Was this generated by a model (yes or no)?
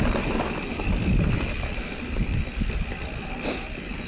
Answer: no